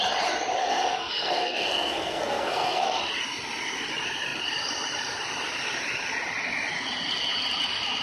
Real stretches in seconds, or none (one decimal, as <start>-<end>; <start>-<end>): 0.0-0.6; 3.0-8.0